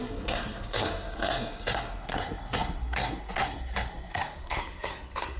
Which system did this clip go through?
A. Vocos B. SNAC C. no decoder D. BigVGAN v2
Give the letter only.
B